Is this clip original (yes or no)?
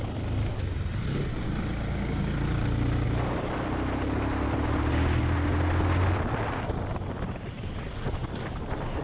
yes